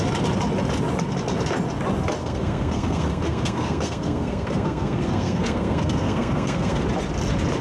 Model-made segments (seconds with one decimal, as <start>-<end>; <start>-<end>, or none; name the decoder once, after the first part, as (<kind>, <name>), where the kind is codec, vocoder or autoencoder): 2.2-6.8 (codec, SNAC)